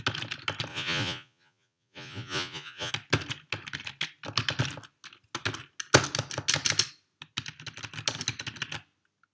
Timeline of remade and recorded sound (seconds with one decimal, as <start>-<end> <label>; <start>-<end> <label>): 0.0-0.7 recorded; 0.7-2.9 remade; 2.9-9.3 recorded